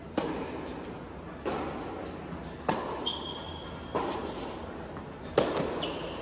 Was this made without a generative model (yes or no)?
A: yes